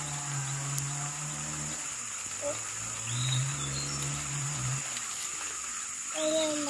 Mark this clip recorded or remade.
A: recorded